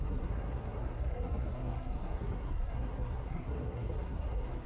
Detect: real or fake fake